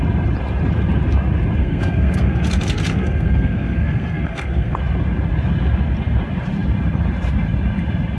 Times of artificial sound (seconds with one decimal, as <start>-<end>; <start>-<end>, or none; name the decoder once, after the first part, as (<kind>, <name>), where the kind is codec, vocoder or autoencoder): 1.6-4.8 (codec, SNAC)